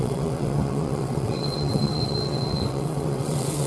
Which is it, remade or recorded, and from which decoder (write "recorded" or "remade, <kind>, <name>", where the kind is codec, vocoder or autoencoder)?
remade, vocoder, WaveNeXt